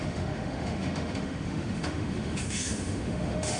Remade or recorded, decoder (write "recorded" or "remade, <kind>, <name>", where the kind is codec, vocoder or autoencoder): remade, autoencoder, DAC-VAE